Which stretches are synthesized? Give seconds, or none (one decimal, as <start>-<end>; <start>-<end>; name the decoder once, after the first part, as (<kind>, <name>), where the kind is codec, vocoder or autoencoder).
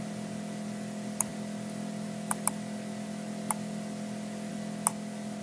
none